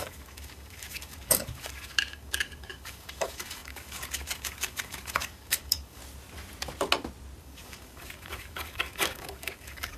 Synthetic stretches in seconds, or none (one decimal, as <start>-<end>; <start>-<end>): 0.0-6.0; 7.4-10.0